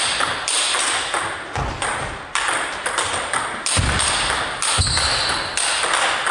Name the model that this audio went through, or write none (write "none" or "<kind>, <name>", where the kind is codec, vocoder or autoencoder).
none